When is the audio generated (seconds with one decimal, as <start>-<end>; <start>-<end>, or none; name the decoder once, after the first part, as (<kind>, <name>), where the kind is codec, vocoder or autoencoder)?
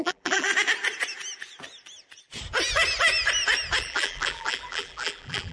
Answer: 0.0-0.5 (vocoder, BigVGAN v2); 3.8-5.5